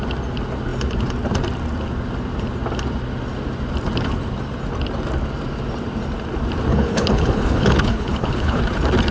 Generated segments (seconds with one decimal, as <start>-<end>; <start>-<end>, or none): 6.7-8.6